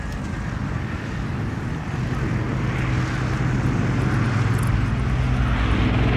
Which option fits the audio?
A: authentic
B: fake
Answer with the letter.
A